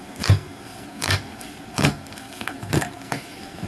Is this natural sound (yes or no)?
no